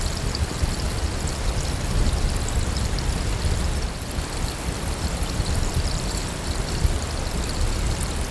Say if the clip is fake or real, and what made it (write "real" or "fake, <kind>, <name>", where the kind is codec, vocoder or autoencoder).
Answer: real